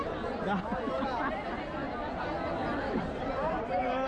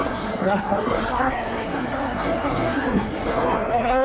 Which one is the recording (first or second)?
first